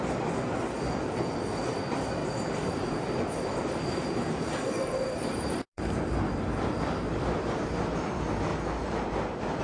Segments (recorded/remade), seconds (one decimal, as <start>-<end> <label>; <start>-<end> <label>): 0.0-2.2 recorded; 2.2-6.0 remade; 6.0-8.5 recorded; 8.5-9.6 remade